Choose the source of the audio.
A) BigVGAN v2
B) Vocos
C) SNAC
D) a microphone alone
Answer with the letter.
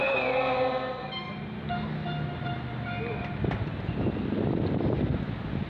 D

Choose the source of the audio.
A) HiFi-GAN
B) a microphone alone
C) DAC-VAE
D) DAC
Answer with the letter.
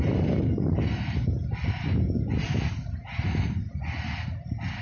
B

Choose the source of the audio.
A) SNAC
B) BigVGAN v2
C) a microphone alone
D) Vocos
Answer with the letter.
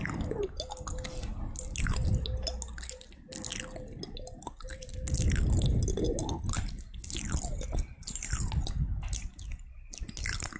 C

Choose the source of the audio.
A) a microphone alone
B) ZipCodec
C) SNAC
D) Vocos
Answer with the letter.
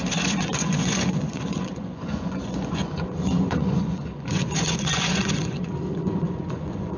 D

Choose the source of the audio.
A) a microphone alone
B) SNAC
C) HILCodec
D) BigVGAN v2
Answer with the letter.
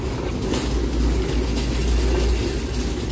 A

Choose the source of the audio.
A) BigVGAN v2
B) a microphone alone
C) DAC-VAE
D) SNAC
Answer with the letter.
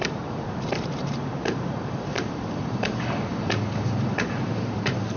A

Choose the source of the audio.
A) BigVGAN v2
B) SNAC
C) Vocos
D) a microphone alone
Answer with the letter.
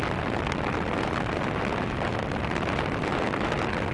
D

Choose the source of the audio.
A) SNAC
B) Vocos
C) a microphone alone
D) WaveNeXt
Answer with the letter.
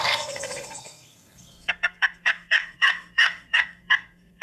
A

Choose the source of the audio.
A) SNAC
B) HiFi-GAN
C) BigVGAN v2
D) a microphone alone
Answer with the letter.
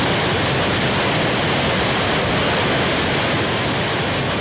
D